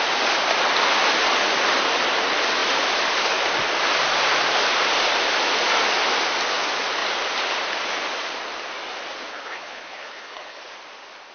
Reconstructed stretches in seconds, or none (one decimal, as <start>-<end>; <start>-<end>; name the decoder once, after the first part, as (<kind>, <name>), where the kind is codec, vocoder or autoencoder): 9.3-10.6 (codec, HILCodec)